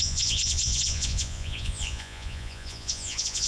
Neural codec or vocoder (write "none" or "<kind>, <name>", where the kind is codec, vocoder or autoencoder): vocoder, Vocos